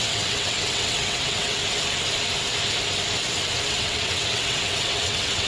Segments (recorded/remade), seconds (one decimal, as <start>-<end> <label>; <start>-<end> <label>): 0.0-1.6 remade; 1.6-3.7 recorded; 3.7-5.5 remade

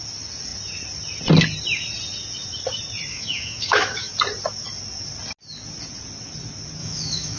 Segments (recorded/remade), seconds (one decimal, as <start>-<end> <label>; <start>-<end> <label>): 0.0-3.1 recorded; 3.1-4.1 remade; 4.1-6.8 recorded; 6.8-7.4 remade